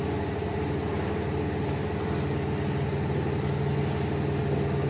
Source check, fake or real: real